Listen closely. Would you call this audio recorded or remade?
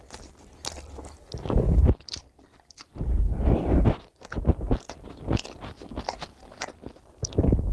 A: recorded